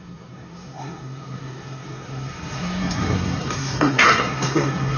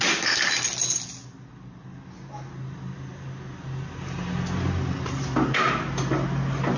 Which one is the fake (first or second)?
first